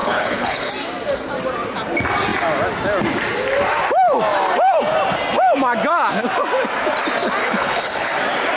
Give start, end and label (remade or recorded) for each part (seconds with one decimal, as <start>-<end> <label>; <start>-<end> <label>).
0.0-0.7 remade; 0.7-7.4 recorded; 7.4-8.1 remade; 8.1-8.6 recorded